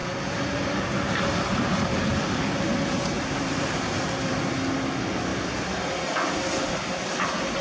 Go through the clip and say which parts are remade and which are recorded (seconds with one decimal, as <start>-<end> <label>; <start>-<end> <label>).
0.0-4.6 remade; 4.6-7.6 recorded